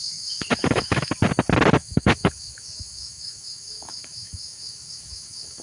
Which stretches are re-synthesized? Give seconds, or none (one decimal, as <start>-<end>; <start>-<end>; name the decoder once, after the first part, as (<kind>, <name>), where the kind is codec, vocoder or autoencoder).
0.0-1.1 (autoencoder, DAC-VAE); 1.8-5.6

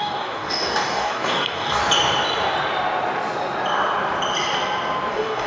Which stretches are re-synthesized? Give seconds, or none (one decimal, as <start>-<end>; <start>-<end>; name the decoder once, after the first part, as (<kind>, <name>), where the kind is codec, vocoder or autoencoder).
0.0-1.8 (codec, DAC); 5.1-5.5

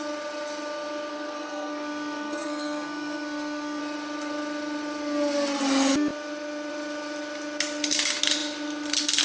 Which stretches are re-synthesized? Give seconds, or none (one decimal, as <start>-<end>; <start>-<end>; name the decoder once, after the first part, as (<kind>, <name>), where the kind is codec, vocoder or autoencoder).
1.1-3.8 (codec, SNAC)

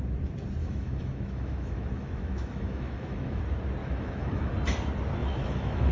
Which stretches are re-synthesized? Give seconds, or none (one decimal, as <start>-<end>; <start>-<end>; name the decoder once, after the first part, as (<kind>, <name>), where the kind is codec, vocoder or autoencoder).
0.6-3.4 (autoencoder, DAC-VAE); 3.8-4.5; 5.2-5.9

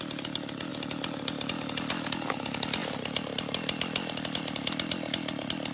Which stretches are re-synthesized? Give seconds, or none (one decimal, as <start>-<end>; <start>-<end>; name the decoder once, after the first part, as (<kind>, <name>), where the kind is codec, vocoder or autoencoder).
none

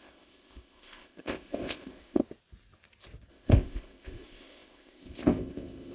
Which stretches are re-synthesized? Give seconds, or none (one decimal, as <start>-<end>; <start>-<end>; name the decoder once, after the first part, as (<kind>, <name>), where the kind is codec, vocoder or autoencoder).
0.0-2.2 (codec, ZipCodec); 3.3-5.9

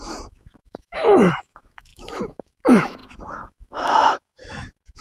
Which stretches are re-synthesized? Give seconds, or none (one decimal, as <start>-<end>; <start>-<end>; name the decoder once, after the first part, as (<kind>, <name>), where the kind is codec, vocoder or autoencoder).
0.0-5.0 (autoencoder, DAC-VAE)

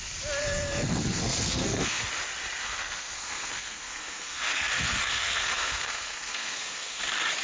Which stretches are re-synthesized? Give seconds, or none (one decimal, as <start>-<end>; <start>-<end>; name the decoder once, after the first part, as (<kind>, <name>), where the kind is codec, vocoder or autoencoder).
0.4-2.1 (codec, SNAC); 2.6-7.0